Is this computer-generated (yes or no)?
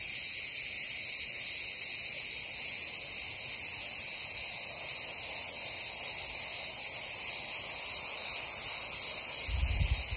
no